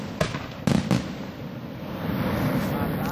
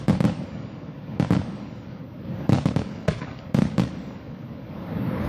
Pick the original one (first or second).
first